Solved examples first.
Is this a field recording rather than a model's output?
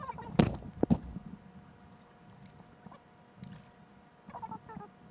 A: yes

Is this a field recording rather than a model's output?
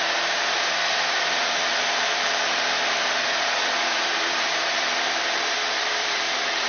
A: no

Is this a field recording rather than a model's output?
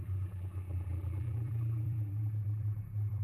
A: no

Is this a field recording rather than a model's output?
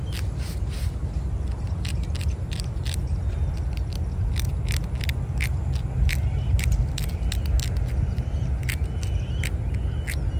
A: yes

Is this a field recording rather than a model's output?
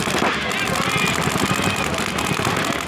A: yes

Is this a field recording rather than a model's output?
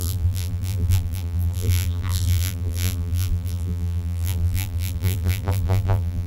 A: no